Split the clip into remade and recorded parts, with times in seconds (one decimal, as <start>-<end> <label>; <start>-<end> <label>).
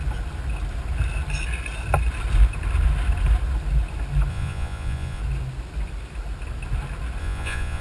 0.0-4.3 recorded; 4.3-5.2 remade; 5.2-7.2 recorded; 7.2-7.8 remade